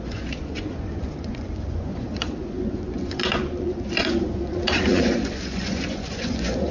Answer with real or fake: fake